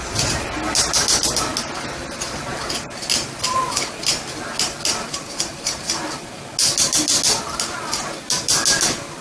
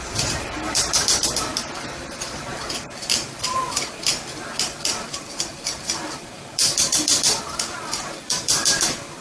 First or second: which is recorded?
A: first